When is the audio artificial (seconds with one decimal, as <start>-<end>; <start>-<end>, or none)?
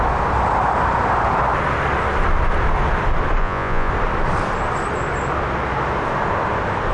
3.4-3.9